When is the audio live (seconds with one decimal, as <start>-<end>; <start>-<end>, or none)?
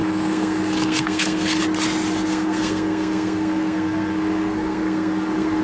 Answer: 1.6-2.3